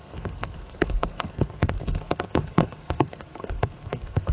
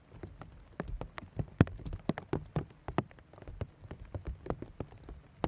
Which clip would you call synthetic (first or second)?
first